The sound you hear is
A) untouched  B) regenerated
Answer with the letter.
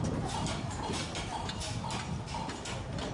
A